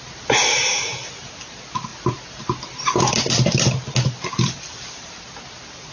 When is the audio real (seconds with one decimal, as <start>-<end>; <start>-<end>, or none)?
0.0-5.9